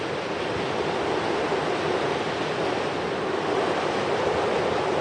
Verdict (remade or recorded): recorded